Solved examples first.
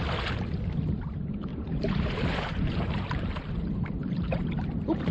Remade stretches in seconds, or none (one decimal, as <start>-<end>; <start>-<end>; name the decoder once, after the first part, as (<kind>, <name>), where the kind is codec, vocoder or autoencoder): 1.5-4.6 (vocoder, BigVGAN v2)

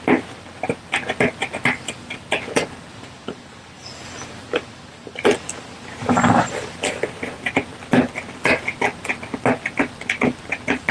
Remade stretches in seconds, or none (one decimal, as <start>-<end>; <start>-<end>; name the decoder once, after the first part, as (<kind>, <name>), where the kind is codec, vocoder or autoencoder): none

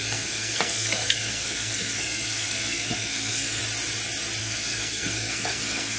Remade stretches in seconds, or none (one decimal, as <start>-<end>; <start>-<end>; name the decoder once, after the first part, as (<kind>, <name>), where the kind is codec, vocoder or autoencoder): 0.0-3.6 (codec, SNAC); 4.4-6.0

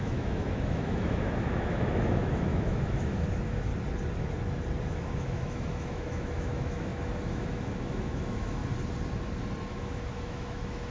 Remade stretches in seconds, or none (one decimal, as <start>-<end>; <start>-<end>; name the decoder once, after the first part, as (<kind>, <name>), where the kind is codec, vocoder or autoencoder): 0.0-3.7 (autoencoder, DAC-VAE); 4.8-8.6; 9.7-10.9